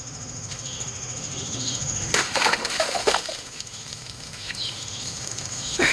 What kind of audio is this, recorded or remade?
remade